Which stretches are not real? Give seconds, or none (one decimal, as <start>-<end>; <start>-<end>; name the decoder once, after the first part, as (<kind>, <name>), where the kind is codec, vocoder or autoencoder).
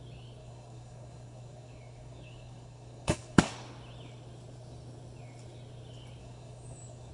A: 0.4-3.5 (codec, DAC); 6.2-7.1